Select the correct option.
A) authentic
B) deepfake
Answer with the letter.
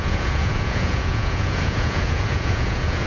B